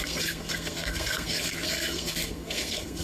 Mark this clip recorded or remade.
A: remade